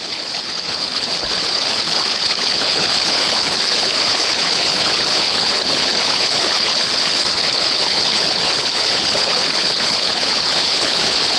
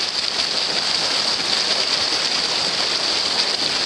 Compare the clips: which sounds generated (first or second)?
first